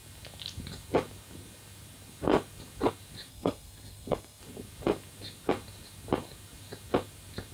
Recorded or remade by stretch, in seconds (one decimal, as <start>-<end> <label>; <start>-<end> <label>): 0.0-3.3 recorded; 3.3-4.4 remade; 4.4-7.5 recorded